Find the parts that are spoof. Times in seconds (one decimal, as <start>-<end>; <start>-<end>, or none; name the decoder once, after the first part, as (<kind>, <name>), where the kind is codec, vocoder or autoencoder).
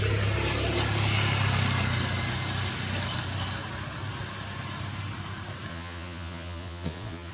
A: 5.7-7.3 (vocoder, Vocos)